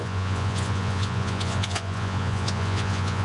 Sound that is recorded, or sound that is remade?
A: remade